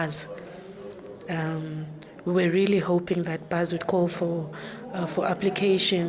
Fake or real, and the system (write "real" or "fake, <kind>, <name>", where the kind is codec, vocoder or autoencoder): real